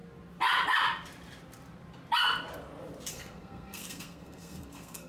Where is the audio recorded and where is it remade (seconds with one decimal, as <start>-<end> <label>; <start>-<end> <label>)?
0.0-3.1 recorded; 3.1-5.1 remade